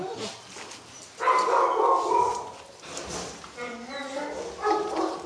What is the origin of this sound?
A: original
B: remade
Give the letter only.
A